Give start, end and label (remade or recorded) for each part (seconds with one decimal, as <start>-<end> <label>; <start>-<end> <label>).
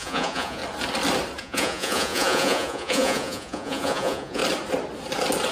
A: 0.0-0.6 remade; 0.6-1.4 recorded; 1.4-4.4 remade; 4.4-5.5 recorded